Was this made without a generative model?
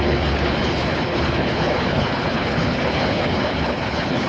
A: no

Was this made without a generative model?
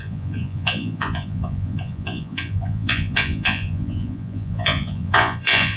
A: no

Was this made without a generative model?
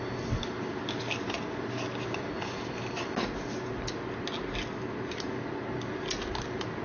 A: yes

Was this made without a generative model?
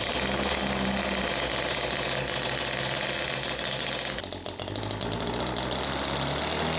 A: yes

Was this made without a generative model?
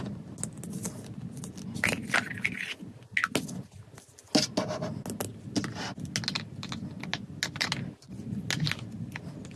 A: yes